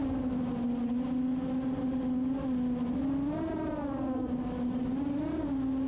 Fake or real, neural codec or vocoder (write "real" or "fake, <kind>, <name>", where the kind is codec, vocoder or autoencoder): real